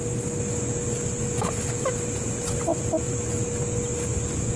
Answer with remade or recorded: recorded